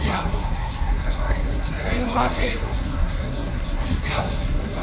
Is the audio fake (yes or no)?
yes